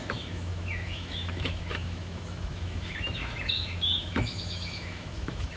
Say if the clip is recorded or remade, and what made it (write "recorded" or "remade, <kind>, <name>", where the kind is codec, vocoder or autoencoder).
remade, autoencoder, DAC-VAE